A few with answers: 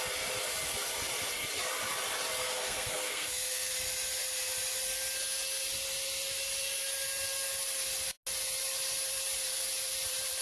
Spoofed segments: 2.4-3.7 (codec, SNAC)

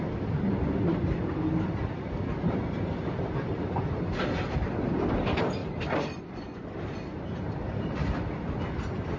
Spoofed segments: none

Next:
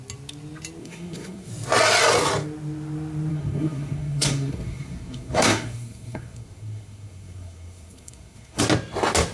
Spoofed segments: 0.8-1.5 (codec, SNAC); 3.3-8.6

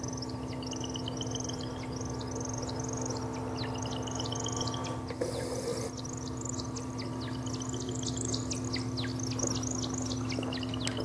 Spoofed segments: none

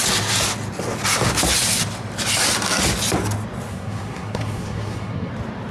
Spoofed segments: 3.7-5.3 (codec, SNAC)

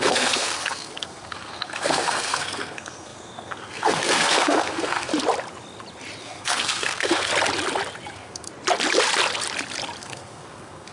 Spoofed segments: 0.0-5.1 (codec, SNAC); 6.2-7.3; 8.1-8.5; 10.0-10.9